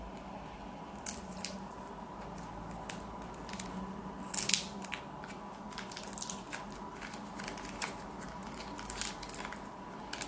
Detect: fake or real real